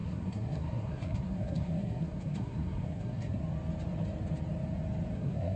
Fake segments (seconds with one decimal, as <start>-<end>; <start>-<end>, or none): 0.0-3.4; 5.1-5.6